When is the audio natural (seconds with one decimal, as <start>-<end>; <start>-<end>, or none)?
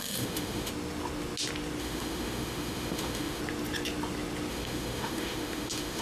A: 0.7-1.8; 3.4-4.5